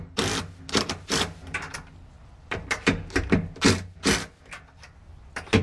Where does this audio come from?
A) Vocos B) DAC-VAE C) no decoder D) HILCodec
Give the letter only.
C